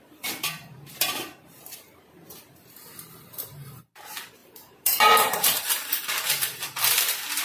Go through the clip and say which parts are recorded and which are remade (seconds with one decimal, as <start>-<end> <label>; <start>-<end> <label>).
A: 0.0-7.4 remade